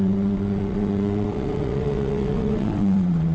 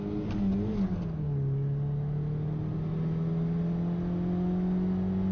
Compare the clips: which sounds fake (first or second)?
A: first